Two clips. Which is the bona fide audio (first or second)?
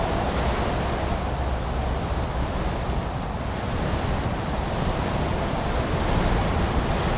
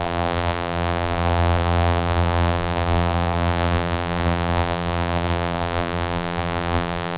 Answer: first